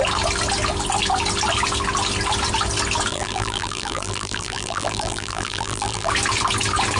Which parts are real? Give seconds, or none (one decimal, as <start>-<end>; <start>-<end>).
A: 0.0-3.1; 6.1-7.0